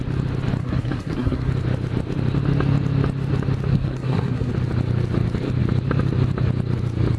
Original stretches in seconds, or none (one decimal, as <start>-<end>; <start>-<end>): 0.0-0.6; 1.5-3.7; 4.5-7.2